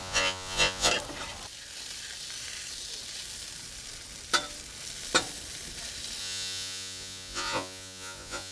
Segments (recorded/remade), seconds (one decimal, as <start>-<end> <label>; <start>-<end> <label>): 0.0-0.9 remade; 0.9-6.2 recorded; 6.2-8.5 remade